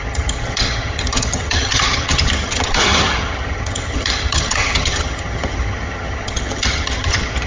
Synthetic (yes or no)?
yes